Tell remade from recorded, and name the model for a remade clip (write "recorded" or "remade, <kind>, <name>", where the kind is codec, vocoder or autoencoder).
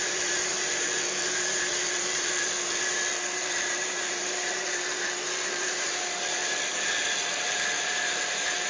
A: remade, vocoder, BigVGAN v2